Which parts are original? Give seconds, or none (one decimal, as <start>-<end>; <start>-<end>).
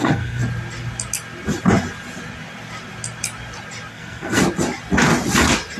0.4-3.9; 4.4-5.8